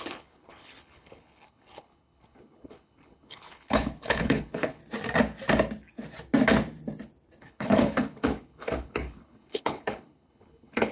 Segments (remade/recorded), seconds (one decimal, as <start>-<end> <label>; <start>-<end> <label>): 0.0-4.8 remade; 4.8-7.4 recorded; 7.4-10.9 remade